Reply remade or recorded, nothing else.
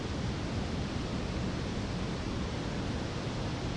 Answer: recorded